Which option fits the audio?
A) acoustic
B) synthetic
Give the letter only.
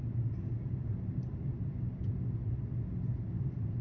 A